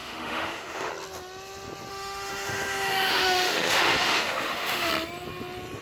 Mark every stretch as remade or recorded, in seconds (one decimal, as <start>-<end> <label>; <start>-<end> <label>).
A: 0.0-0.9 remade; 0.9-1.9 recorded; 1.9-4.9 remade; 4.9-5.8 recorded